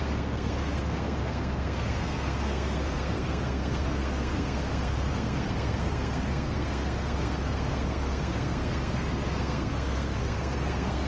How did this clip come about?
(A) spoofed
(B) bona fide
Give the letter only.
A